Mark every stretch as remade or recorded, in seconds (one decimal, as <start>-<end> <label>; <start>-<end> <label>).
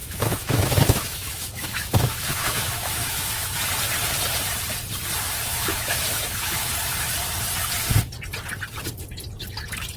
0.0-3.6 remade; 3.6-5.5 recorded; 5.5-6.6 remade; 6.6-10.0 recorded